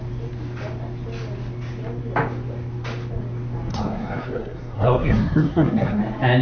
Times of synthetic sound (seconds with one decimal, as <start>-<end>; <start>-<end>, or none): 3.7-6.0

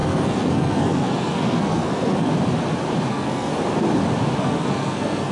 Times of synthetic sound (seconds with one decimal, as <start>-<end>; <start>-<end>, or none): 0.0-2.3; 3.1-3.5; 4.4-5.3

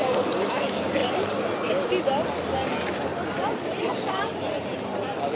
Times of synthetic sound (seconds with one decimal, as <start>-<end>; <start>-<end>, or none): 1.0-1.7; 3.1-4.8

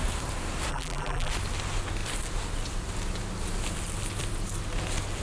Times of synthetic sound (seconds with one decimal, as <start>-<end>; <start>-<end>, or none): 0.7-1.3

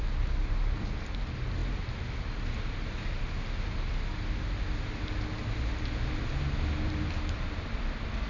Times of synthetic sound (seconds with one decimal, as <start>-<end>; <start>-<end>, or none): none

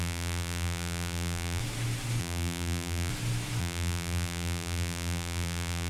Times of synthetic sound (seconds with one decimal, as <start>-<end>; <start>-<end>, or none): 0.0-1.6; 2.2-3.1; 3.6-5.9

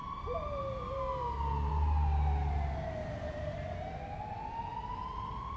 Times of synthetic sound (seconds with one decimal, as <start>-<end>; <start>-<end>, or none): none

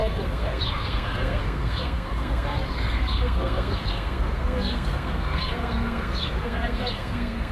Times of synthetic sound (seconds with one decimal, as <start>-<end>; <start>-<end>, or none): 0.0-7.5